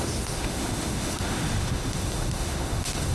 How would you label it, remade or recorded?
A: remade